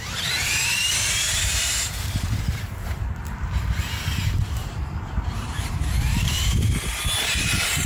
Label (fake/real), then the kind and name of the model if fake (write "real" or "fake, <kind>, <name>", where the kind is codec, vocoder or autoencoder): fake, vocoder, BigVGAN v2